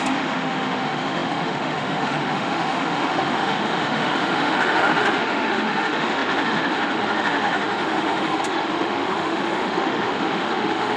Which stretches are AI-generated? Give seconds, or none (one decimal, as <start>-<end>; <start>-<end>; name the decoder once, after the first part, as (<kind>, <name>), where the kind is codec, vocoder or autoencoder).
0.0-11.0 (autoencoder, DAC-VAE)